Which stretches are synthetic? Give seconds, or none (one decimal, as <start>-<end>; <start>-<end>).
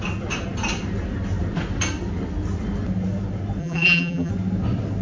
3.6-4.3